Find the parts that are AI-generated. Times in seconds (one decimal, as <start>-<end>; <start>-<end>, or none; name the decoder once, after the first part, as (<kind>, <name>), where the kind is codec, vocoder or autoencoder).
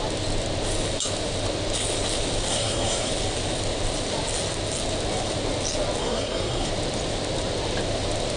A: 2.5-3.1 (codec, SNAC); 6.0-6.7